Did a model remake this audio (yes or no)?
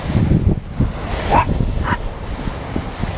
no